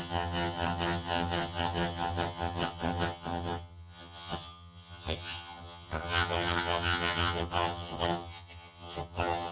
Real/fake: fake